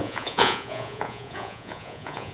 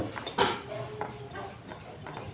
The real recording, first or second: second